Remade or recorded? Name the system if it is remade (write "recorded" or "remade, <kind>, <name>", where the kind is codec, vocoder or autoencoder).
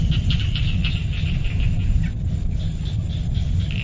recorded